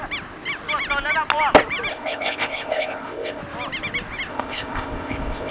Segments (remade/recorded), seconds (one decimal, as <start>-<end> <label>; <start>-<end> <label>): 0.0-1.9 recorded; 1.9-3.4 remade; 3.4-4.3 recorded; 4.3-5.5 remade